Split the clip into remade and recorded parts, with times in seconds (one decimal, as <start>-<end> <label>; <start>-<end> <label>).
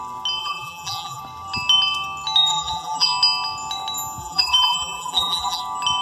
0.0-0.4 recorded; 0.4-1.2 remade; 1.2-2.5 recorded; 2.5-3.1 remade; 3.1-4.2 recorded; 4.2-5.6 remade; 5.6-6.0 recorded